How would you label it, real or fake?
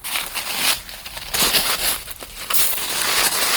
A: real